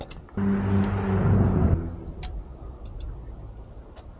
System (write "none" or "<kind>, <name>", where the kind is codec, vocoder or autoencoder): none